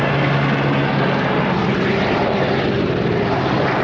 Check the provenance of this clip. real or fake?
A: real